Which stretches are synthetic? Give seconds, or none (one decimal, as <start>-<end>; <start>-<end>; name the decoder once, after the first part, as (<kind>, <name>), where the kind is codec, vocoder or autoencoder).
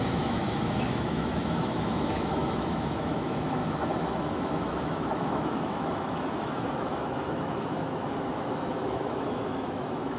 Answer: 0.0-3.6 (autoencoder, DAC-VAE); 4.2-10.2